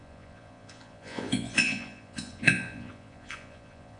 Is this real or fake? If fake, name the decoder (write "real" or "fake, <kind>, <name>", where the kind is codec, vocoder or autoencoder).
fake, vocoder, Vocos